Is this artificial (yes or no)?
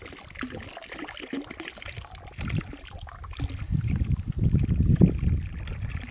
no